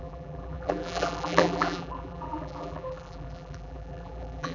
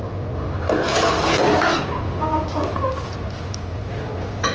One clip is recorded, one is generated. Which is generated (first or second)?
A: first